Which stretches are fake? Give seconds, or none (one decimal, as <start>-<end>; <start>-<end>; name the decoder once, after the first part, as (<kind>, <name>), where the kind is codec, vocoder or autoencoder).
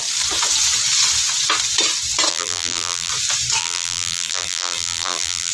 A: 2.3-3.1 (vocoder, BigVGAN v2); 3.6-5.5